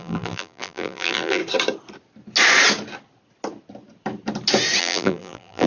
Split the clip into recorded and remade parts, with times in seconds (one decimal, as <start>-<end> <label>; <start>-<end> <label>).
0.0-1.4 remade; 1.4-4.8 recorded; 4.8-5.7 remade